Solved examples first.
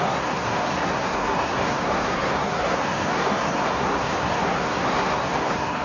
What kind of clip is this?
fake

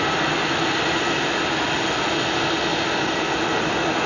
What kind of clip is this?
real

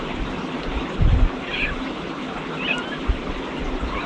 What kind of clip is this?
real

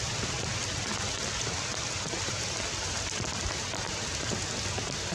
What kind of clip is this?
real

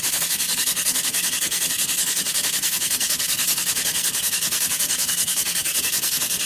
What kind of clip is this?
fake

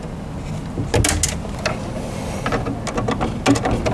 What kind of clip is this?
real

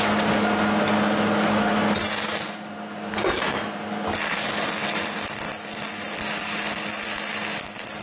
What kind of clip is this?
real